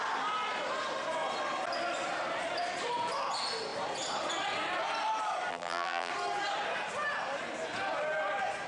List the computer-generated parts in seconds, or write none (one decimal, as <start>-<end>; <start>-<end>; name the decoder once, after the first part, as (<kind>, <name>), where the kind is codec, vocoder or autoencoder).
5.5-6.1 (vocoder, BigVGAN v2)